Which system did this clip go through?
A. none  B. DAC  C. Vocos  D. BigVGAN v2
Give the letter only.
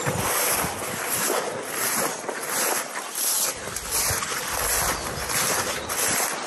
A